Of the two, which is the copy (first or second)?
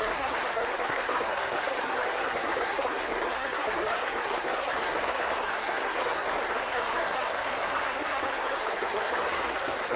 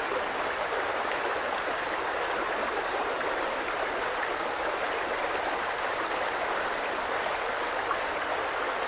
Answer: first